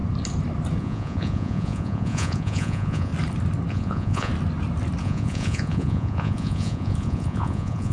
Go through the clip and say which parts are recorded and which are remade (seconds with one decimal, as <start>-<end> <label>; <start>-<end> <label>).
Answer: 0.0-0.8 recorded; 0.8-3.1 remade; 3.1-3.7 recorded; 3.7-4.3 remade; 4.3-5.0 recorded; 5.0-7.9 remade